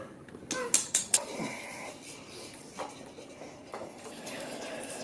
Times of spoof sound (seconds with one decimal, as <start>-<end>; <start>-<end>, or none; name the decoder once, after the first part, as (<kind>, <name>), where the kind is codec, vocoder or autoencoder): 0.6-1.3 (codec, DAC); 3.7-4.6